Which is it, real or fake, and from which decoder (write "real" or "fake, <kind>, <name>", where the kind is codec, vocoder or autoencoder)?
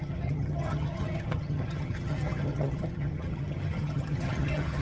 fake, vocoder, HiFi-GAN